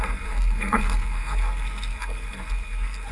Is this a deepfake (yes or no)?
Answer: yes